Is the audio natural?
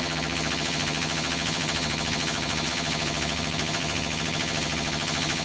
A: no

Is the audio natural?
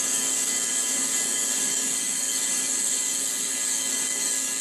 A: no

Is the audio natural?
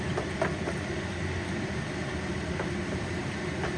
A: yes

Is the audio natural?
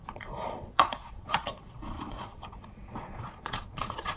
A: no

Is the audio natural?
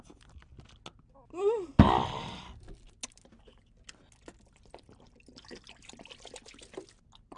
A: yes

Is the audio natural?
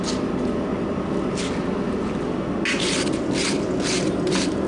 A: yes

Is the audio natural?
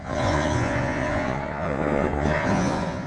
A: no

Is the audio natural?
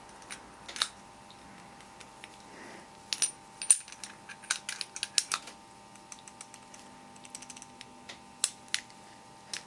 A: yes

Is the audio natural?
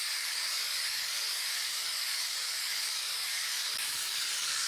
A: no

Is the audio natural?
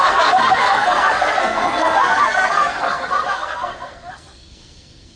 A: no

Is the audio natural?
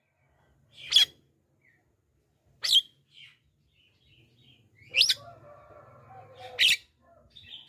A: yes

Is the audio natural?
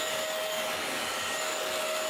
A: no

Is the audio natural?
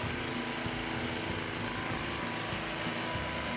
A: yes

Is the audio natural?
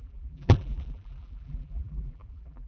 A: no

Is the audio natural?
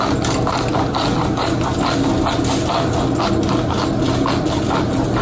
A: yes